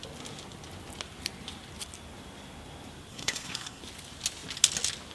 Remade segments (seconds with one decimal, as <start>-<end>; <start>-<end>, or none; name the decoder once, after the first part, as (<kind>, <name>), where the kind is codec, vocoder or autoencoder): 3.1-3.8 (codec, SNAC)